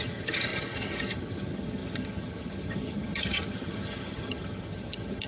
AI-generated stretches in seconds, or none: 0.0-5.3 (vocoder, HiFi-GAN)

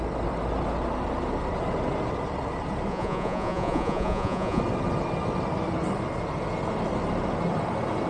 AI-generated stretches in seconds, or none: 2.9-4.6 (vocoder, Vocos)

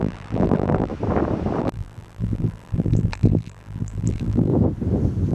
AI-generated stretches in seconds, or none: 0.0-0.9 (vocoder, BigVGAN v2); 1.6-4.5

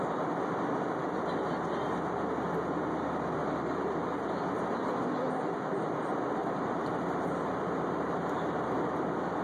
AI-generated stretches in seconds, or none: 3.4-4.4 (vocoder, BigVGAN v2); 6.4-8.8